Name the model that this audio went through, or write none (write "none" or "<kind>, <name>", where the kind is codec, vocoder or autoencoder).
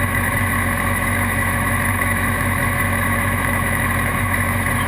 autoencoder, DAC-VAE